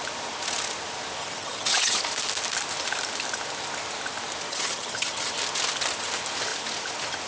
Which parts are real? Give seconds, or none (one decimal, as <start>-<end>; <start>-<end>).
0.0-1.2; 2.0-4.5; 5.3-7.3